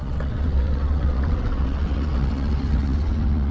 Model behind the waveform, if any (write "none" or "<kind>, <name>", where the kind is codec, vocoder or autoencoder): vocoder, WaveNeXt